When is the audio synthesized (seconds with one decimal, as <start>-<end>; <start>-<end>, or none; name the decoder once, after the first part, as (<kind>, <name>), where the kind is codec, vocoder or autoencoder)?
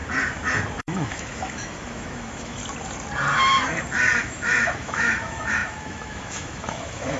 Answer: 0.8-2.6 (autoencoder, DAC-VAE); 4.2-7.2